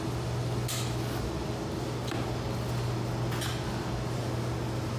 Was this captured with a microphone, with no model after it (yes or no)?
yes